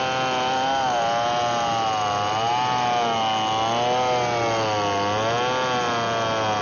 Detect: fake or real real